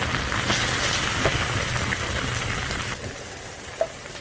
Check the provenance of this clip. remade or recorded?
recorded